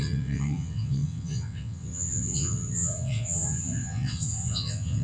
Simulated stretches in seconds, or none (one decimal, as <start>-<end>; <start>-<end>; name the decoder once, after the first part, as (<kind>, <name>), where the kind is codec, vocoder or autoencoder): 0.0-5.0 (vocoder, WaveNeXt)